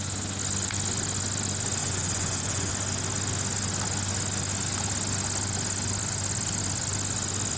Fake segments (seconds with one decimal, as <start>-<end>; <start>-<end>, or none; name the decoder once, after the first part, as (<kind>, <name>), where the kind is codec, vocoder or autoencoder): 1.8-2.7 (vocoder, Vocos)